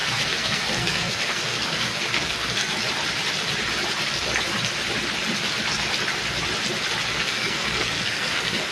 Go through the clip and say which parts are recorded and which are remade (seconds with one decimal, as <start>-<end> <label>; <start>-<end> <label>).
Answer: 0.0-2.8 remade; 2.8-7.1 recorded; 7.1-8.7 remade